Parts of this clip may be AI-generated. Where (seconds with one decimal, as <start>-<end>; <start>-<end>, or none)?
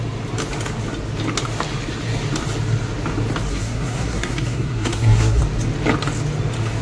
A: 3.5-5.4